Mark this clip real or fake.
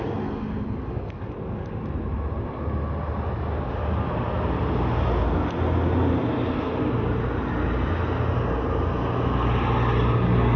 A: real